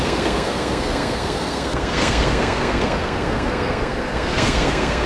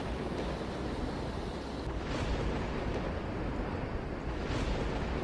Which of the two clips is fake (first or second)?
first